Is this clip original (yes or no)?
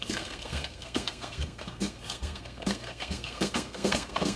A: no